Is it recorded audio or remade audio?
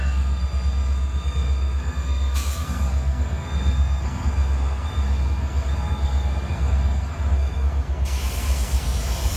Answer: remade